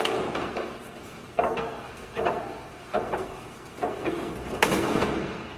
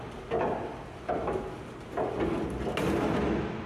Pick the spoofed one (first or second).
first